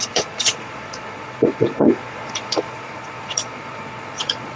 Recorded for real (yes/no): no